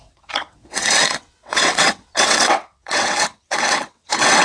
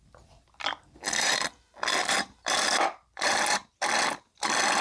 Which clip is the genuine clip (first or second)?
second